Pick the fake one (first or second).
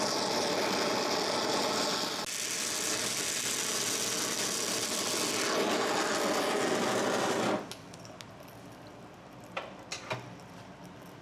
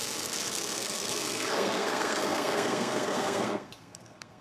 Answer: second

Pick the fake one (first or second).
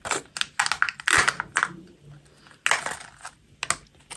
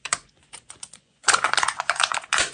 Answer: second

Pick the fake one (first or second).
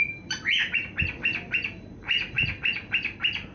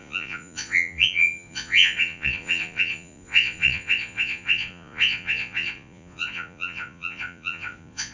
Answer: second